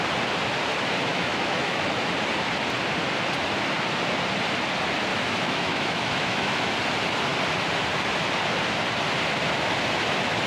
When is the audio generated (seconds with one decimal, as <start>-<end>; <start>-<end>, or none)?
1.1-2.1; 5.1-6.7